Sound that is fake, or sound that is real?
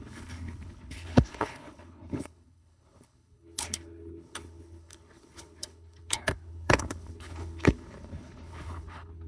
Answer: fake